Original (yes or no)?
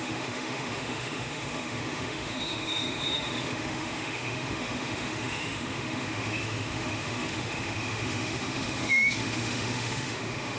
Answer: no